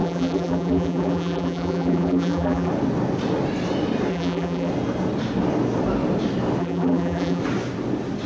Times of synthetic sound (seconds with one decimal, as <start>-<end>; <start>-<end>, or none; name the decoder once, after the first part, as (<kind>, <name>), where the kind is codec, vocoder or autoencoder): 0.0-2.7 (vocoder, BigVGAN v2); 4.1-4.7; 6.6-7.4